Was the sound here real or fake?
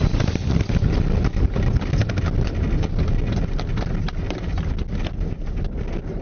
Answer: real